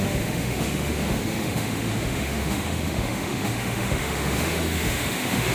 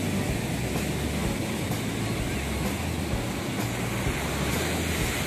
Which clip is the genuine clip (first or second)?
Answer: second